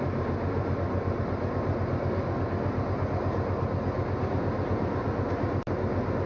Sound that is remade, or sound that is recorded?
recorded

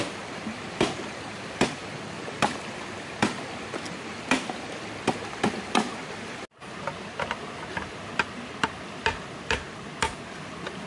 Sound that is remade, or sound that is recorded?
recorded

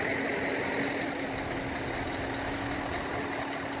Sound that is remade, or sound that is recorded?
recorded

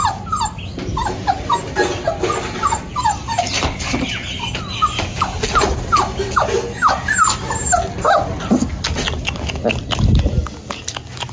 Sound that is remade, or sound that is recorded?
recorded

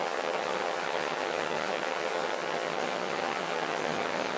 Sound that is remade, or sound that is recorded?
remade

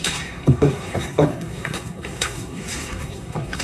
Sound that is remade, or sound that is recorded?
remade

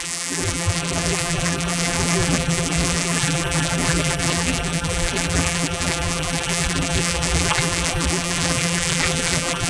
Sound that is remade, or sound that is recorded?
remade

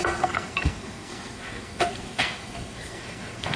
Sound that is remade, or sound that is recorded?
remade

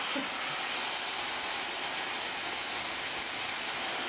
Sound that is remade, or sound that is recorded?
recorded